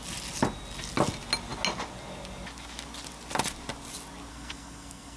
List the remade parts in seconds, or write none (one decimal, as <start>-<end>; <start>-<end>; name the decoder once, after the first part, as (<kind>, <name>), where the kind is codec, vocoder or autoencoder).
4.3-5.2 (codec, SNAC)

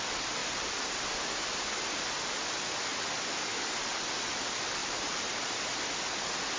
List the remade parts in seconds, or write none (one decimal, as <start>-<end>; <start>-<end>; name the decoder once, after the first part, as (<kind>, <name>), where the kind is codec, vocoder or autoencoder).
0.4-1.0 (vocoder, BigVGAN v2); 3.5-4.0; 4.8-5.3